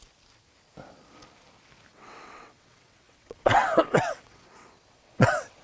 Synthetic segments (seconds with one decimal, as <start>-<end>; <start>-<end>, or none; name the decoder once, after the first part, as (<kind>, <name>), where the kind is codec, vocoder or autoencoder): 1.9-5.6 (vocoder, WaveNeXt)